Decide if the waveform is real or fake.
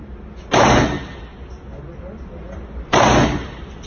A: real